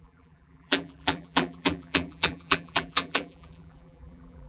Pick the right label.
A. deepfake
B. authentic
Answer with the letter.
A